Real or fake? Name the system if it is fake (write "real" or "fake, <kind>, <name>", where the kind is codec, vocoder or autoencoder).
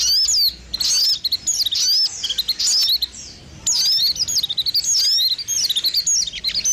real